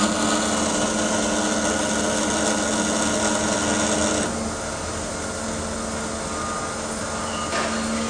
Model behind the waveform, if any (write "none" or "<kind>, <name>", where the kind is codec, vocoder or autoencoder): none